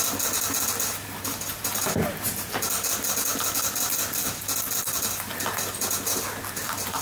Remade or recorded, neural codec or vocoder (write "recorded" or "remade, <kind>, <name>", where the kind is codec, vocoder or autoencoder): recorded